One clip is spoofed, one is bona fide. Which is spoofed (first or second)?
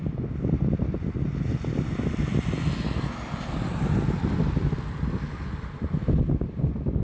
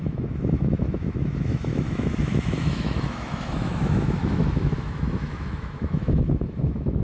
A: second